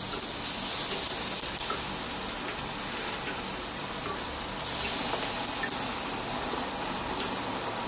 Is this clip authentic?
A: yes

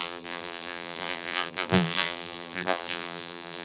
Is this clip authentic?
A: no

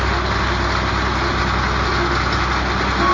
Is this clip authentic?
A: yes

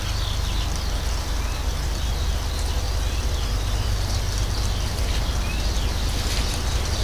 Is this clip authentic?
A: yes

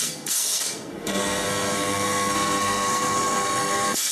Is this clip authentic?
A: no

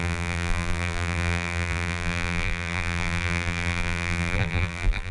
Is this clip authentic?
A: no